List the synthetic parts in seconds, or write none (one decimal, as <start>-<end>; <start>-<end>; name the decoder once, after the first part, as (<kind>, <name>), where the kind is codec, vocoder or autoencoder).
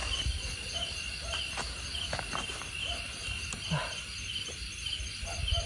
none